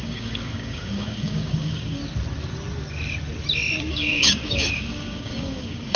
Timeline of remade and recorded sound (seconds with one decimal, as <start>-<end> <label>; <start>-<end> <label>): 0.0-2.0 remade; 2.0-3.9 recorded; 3.9-6.0 remade